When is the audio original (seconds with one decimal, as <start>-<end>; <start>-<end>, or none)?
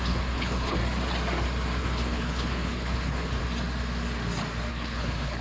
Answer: 0.8-1.8; 3.4-4.7